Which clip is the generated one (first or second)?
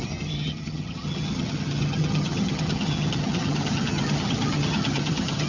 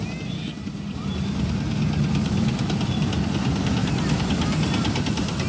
first